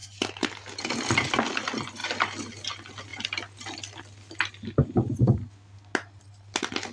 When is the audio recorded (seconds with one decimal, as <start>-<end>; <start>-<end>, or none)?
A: 0.0-6.9